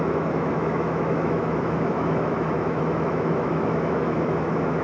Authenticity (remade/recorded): remade